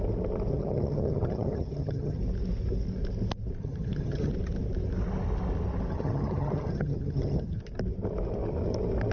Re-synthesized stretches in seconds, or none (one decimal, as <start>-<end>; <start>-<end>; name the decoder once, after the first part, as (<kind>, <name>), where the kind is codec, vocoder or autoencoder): 0.5-2.2 (vocoder, HiFi-GAN); 3.6-4.3; 5.9-7.6